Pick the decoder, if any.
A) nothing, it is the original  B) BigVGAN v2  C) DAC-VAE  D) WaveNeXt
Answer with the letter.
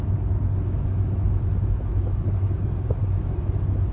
C